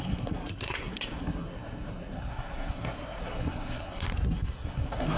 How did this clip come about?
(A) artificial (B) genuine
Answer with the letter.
A